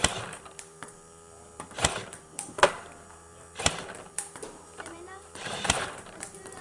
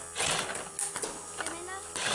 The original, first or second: second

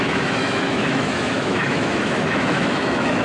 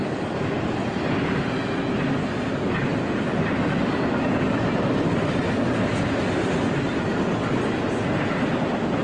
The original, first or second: second